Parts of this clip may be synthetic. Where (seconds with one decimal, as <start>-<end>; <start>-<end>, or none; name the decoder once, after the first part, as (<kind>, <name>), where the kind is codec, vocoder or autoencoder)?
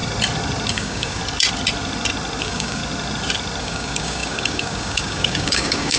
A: 0.7-1.2 (codec, DAC); 2.4-2.8; 3.6-6.0